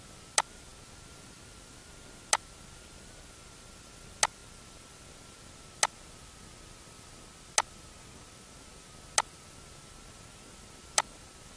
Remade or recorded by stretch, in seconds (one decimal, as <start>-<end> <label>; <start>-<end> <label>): 0.0-11.6 recorded